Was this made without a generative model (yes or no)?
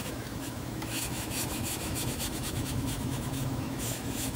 no